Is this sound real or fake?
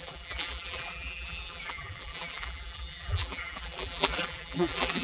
fake